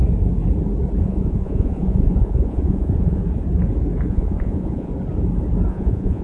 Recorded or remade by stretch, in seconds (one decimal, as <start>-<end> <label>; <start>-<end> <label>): 0.0-1.0 recorded; 1.0-3.2 remade; 3.2-4.1 recorded; 4.1-4.9 remade; 4.9-5.7 recorded; 5.7-6.2 remade